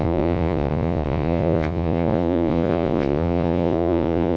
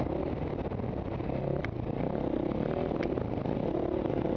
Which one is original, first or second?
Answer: second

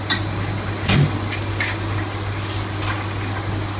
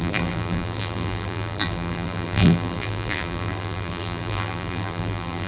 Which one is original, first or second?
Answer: first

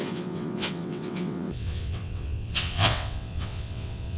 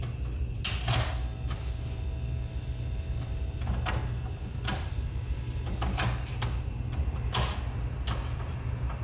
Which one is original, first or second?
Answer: second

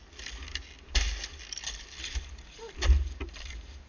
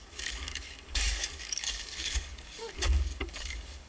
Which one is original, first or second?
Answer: first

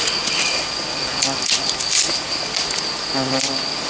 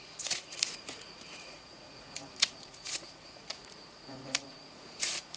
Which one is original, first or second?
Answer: first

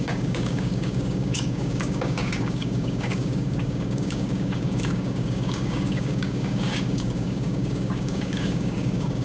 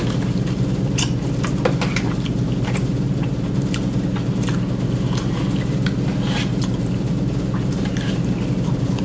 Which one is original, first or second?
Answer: second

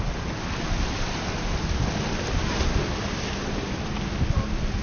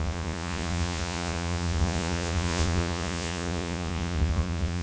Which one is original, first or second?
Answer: first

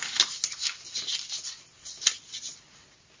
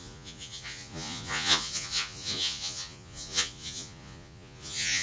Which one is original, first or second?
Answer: first